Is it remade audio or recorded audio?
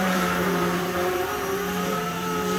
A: remade